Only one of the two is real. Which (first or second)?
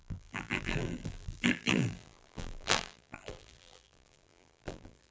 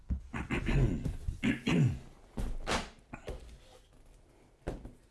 second